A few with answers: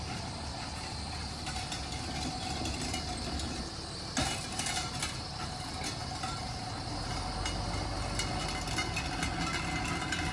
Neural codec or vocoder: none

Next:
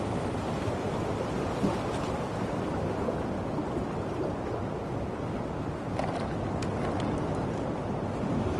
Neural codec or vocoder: none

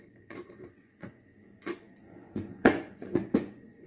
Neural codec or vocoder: vocoder, Vocos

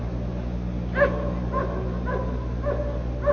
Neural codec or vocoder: none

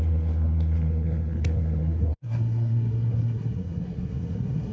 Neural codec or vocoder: codec, SNAC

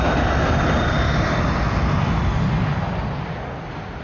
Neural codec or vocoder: none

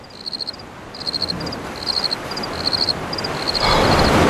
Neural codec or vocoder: none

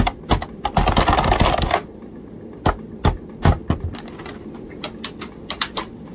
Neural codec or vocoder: none